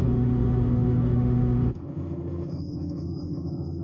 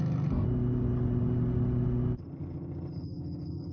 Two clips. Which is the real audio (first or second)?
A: second